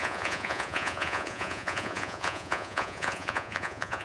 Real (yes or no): no